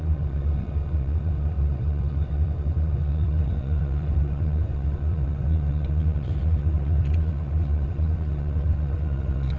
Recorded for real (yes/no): no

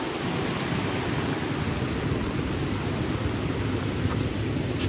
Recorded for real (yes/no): yes